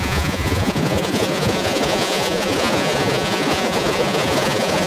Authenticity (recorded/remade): remade